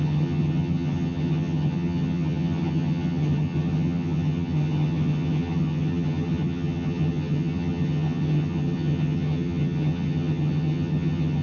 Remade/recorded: remade